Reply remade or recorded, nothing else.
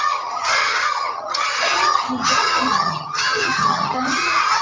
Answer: remade